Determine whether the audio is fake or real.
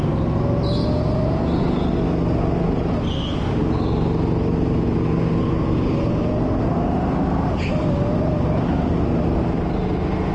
real